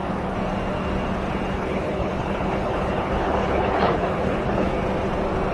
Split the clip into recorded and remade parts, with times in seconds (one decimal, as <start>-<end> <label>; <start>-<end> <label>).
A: 0.0-1.5 recorded; 1.5-4.7 remade; 4.7-5.5 recorded